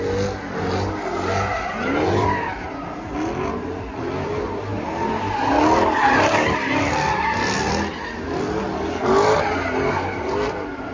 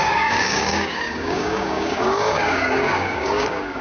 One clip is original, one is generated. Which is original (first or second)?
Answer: first